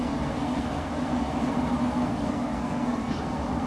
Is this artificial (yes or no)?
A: yes